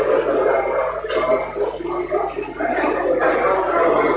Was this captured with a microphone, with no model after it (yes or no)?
yes